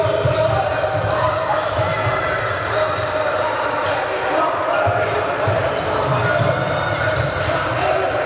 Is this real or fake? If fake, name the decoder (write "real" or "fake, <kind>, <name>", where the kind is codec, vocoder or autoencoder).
fake, vocoder, BigVGAN v2